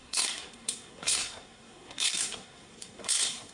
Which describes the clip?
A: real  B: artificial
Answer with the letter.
B